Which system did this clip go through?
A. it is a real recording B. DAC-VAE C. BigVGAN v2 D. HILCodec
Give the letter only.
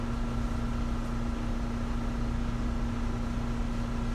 A